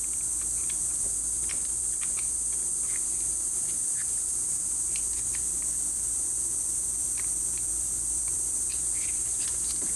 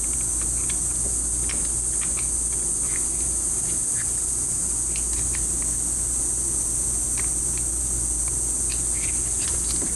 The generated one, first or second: first